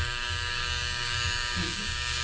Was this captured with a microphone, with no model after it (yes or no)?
no